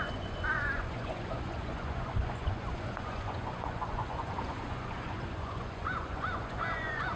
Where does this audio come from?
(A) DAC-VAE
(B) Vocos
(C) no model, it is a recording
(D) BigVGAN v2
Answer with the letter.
B